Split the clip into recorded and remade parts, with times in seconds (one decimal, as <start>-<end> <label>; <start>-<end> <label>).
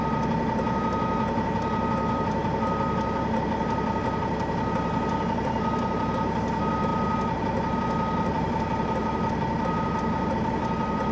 0.0-11.1 recorded